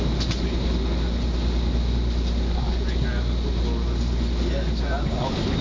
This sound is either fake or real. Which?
real